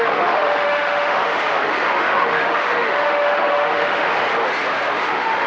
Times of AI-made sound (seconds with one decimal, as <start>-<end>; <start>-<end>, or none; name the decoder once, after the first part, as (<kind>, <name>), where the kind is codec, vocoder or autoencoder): 0.0-4.2 (autoencoder, DAC-VAE); 4.9-5.5

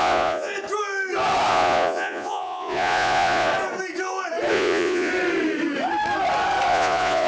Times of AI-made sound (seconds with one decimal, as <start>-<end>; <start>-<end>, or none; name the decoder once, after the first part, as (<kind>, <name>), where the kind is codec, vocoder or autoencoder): 0.0-0.5 (vocoder, Vocos); 1.5-3.5; 4.5-5.1; 6.7-7.3